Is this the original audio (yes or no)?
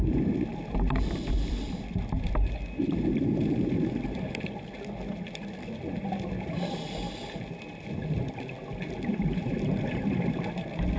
yes